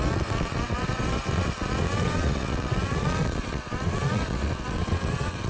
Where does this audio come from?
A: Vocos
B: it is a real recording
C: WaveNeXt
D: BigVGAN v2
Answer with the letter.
C